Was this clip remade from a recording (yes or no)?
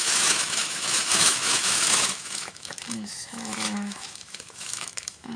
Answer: yes